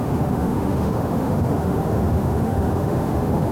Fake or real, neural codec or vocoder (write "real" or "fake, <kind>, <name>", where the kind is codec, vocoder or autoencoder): fake, autoencoder, DAC-VAE